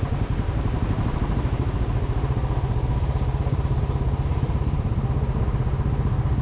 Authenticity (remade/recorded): recorded